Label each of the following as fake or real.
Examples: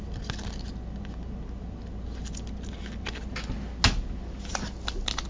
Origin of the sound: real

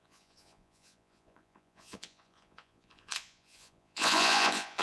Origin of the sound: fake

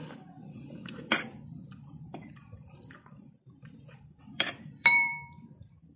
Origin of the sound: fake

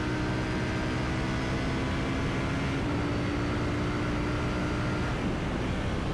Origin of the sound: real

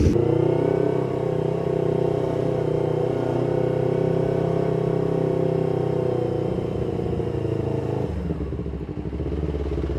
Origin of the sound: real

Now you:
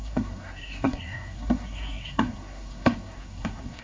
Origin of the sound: fake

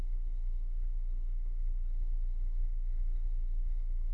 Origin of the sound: fake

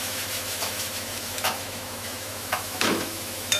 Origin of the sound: fake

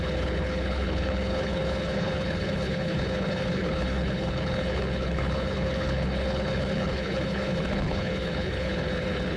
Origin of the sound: fake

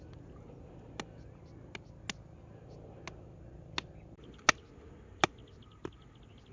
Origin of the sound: real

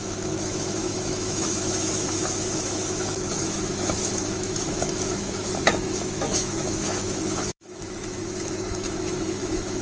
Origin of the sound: fake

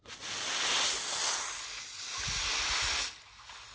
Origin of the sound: real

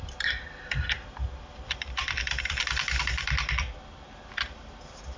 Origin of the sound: fake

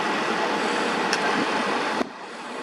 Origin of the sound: fake